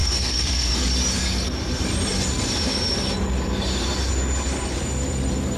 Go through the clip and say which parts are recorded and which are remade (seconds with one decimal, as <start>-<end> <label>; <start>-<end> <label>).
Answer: 0.0-0.7 remade; 0.7-5.6 recorded